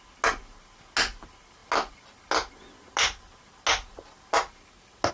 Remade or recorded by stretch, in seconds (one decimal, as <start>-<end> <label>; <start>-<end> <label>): 0.0-5.1 recorded